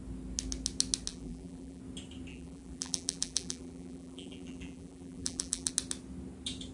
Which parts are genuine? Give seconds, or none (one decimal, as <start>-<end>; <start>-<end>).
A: 0.0-1.1; 1.8-2.3; 5.7-6.7